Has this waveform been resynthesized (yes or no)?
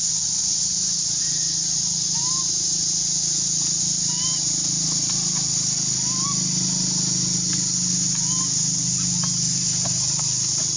no